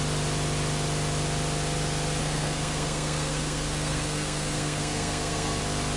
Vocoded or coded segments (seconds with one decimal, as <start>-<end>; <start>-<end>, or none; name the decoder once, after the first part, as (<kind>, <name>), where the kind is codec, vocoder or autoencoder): 2.2-5.6 (codec, SNAC)